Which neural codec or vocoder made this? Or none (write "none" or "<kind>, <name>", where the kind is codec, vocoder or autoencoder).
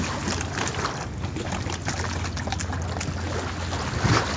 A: none